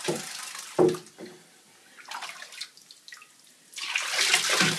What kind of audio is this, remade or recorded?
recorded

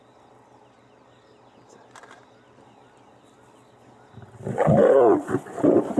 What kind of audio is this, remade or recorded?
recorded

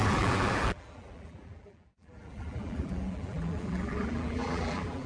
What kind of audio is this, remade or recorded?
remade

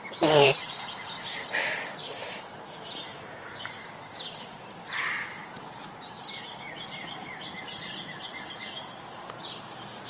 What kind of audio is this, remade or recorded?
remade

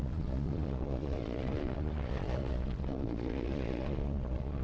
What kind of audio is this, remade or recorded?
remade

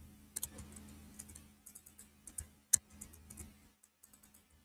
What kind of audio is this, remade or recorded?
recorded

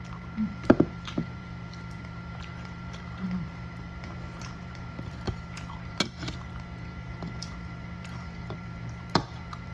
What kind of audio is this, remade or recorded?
remade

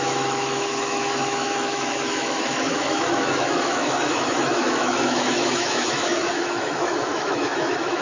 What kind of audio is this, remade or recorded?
remade